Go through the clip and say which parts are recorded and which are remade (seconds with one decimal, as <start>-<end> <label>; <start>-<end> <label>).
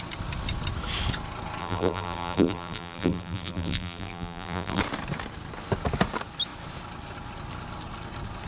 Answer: 0.0-1.6 recorded; 1.6-4.8 remade; 4.8-8.5 recorded